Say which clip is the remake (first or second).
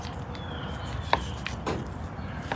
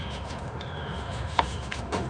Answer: second